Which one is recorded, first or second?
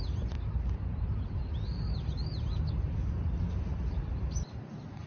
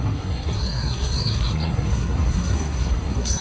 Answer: first